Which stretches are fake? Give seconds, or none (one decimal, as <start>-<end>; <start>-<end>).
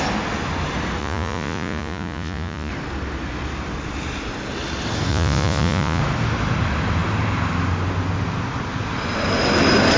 1.0-2.7; 5.1-6.0